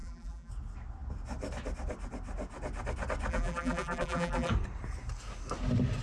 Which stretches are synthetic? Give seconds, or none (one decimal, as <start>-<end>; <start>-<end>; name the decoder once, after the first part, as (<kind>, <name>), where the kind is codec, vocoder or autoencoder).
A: 0.0-0.5 (vocoder, BigVGAN v2); 3.3-4.5